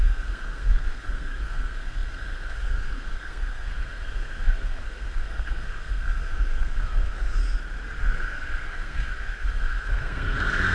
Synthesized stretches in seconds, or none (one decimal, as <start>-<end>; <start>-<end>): 0.0-7.4; 8.0-10.7